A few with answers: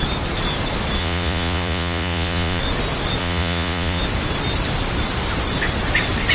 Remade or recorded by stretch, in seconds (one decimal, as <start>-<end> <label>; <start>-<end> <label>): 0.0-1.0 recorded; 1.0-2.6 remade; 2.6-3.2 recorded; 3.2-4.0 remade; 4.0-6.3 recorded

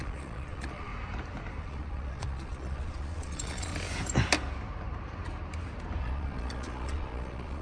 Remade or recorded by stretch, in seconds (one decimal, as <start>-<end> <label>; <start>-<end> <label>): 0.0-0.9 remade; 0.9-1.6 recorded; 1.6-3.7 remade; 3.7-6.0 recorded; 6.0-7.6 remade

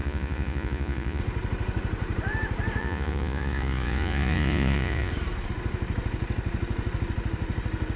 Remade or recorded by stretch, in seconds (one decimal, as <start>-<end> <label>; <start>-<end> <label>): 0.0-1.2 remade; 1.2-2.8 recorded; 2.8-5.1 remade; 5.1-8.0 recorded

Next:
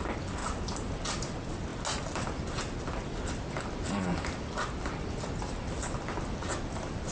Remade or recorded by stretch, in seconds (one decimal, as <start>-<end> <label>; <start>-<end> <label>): 0.0-7.1 recorded

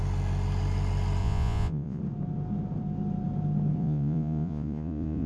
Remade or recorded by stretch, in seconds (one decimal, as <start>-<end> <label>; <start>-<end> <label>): 0.0-1.2 recorded; 1.2-2.0 remade; 2.0-3.8 recorded; 3.8-5.3 remade